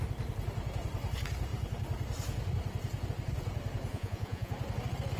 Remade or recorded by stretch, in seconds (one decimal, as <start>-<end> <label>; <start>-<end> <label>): 0.0-3.9 recorded; 3.9-4.5 remade; 4.5-5.2 recorded